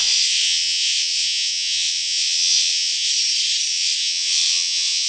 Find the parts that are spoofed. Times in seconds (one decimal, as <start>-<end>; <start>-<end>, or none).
0.0-3.1; 3.7-5.1